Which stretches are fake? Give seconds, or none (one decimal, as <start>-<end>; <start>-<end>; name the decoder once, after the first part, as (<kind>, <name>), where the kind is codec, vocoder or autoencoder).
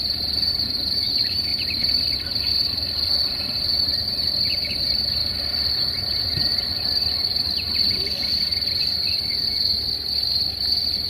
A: 0.0-1.5 (vocoder, BigVGAN v2); 3.7-5.2; 6.3-8.5; 10.7-11.1